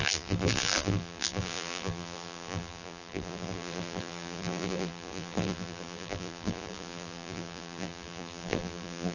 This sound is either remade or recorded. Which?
remade